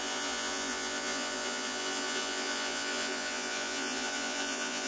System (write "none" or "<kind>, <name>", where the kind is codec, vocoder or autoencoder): vocoder, Vocos